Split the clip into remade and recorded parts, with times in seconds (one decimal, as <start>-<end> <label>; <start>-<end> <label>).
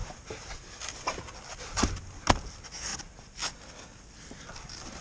0.0-5.0 recorded